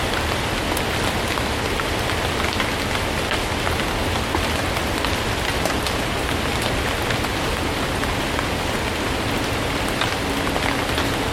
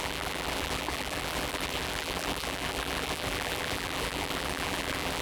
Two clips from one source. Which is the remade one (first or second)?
second